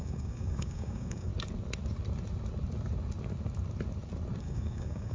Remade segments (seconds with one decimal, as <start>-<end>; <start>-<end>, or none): 0.0-1.3; 4.4-5.1